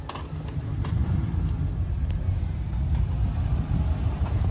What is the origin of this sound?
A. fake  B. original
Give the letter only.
B